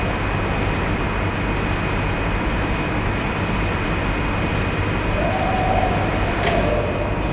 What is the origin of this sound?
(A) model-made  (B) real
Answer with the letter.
B